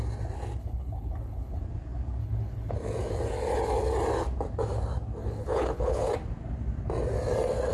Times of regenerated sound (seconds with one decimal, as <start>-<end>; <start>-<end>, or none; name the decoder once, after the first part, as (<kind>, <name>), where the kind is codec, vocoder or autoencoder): 0.6-1.6 (codec, HILCodec); 2.2-2.7; 5.2-6.1

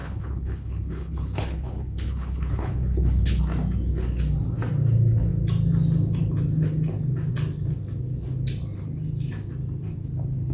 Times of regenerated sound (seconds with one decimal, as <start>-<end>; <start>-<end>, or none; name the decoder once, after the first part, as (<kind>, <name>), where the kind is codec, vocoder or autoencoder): 0.0-3.4 (codec, HILCodec)

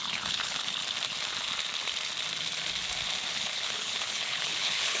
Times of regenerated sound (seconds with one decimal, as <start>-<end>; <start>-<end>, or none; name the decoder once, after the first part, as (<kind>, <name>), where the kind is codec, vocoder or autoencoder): 0.0-0.8 (codec, HILCodec); 3.3-5.0

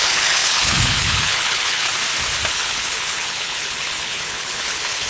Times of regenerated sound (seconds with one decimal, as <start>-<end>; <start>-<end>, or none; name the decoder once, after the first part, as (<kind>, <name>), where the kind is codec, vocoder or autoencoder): 0.0-1.9 (codec, HILCodec); 2.5-5.1

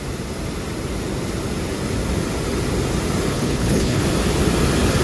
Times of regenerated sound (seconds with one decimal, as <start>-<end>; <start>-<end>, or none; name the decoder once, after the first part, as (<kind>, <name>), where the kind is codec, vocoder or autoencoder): 3.3-4.0 (codec, HILCodec)

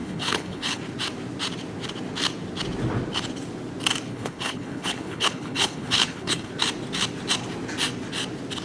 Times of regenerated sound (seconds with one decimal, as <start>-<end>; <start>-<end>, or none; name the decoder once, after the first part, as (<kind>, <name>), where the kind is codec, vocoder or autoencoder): 0.0-0.8 (codec, HILCodec); 4.1-6.5

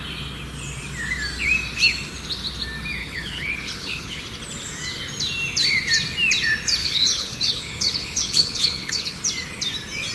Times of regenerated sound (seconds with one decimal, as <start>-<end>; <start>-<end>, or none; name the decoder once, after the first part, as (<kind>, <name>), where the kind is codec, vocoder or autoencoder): 3.0-4.2 (codec, HILCodec); 6.8-9.2